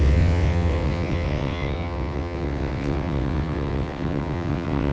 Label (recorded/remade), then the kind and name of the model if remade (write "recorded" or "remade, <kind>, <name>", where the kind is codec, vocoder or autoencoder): remade, vocoder, WaveNeXt